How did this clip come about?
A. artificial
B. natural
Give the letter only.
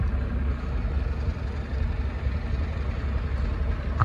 B